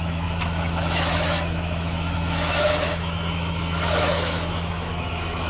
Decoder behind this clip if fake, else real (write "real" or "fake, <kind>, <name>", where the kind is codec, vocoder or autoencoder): fake, autoencoder, DAC-VAE